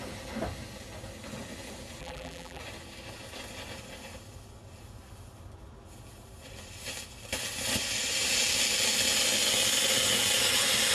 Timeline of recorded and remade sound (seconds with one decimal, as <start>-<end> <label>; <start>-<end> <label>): 0.0-2.0 recorded; 2.0-2.6 remade; 2.6-10.9 recorded